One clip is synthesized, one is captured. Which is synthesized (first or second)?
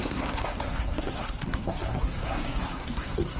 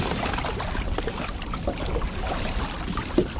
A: first